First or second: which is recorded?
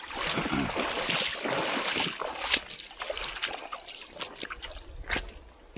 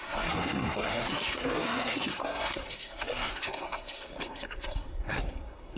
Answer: first